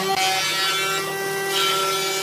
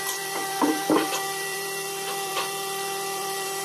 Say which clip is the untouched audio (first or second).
first